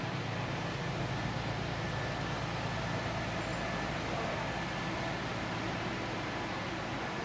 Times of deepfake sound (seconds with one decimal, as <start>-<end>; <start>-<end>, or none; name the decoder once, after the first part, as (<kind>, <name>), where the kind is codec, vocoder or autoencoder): none